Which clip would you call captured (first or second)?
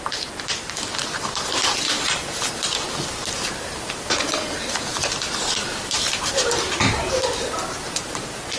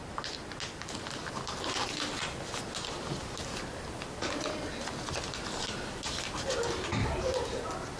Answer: second